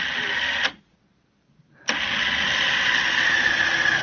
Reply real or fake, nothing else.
real